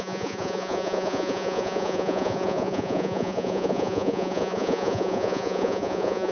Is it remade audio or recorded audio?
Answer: remade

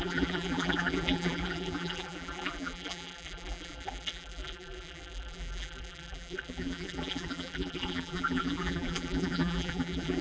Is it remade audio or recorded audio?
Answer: remade